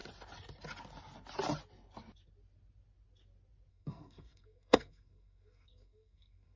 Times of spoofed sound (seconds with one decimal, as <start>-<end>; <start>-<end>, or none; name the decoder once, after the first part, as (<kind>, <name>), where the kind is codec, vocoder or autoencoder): 3.7-6.6 (codec, SNAC)

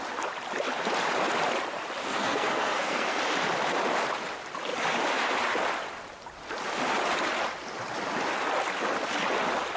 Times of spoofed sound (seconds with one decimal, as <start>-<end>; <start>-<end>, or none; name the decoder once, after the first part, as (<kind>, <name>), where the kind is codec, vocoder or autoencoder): 2.0-3.2 (codec, SNAC)

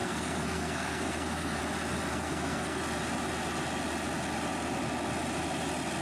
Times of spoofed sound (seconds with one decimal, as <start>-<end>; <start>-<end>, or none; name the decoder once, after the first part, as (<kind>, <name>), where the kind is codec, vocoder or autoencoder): 0.0-1.6 (codec, SNAC); 2.1-2.8

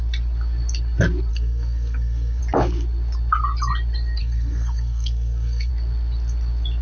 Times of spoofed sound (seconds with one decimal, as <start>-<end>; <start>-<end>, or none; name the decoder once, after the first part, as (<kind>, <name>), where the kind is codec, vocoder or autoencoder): 1.3-2.4 (codec, SNAC); 4.2-5.7

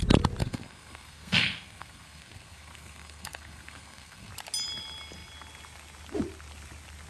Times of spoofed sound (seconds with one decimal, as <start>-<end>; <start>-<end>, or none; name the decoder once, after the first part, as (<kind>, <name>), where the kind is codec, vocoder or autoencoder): 0.4-4.3 (codec, SNAC)